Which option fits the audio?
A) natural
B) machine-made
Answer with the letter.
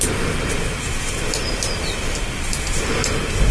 A